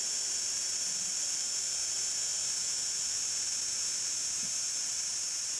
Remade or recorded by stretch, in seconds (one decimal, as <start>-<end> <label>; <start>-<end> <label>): 0.0-1.1 recorded; 1.1-1.6 remade; 1.6-5.6 recorded